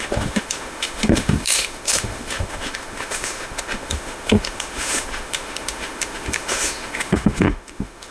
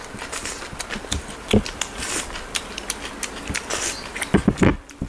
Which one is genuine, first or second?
second